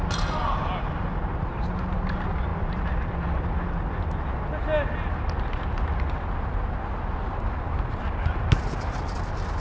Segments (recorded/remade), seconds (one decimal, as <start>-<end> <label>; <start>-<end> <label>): 0.0-9.6 recorded